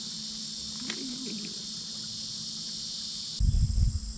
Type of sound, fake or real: real